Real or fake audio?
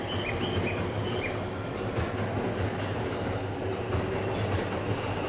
real